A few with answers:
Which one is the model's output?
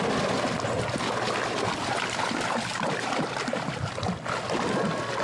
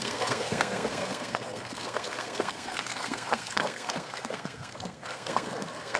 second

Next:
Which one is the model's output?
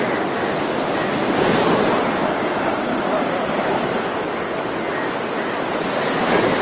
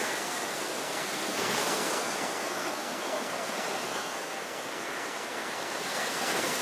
second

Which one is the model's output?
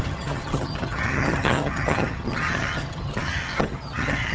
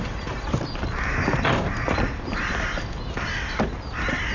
first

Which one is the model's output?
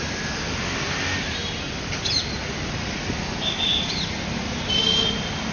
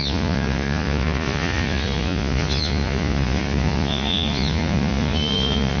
second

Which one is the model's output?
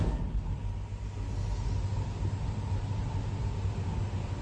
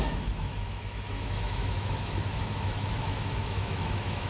second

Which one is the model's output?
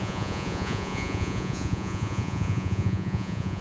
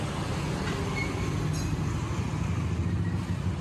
first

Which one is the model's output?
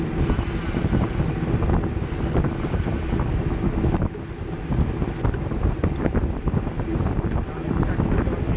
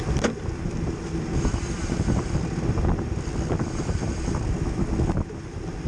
second